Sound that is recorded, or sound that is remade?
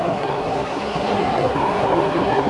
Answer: remade